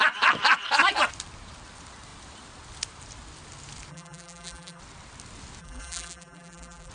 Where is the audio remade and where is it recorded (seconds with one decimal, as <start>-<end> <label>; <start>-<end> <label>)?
0.0-3.9 recorded; 3.9-4.8 remade; 4.8-5.6 recorded; 5.6-6.9 remade